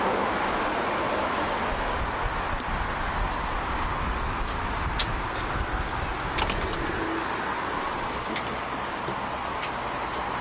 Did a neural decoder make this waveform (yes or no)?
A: no